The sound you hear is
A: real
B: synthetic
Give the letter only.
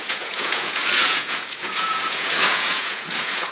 B